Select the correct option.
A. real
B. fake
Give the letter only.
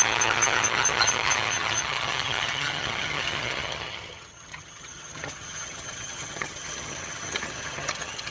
B